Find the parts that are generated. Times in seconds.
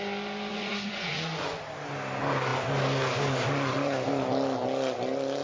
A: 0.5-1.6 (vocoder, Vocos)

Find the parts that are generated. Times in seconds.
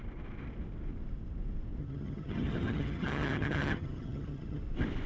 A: 1.8-4.6 (vocoder, HiFi-GAN)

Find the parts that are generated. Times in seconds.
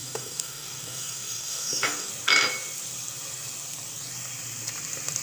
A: 0.0-2.1 (codec, DAC)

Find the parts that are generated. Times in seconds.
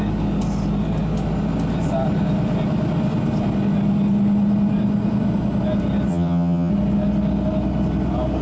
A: 6.1-6.7 (vocoder, HiFi-GAN)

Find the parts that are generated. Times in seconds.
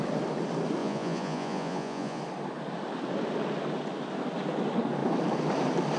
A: 0.8-2.2 (vocoder, Vocos)